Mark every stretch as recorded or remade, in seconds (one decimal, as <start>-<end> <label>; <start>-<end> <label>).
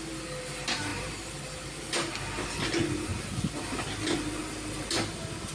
0.0-5.5 recorded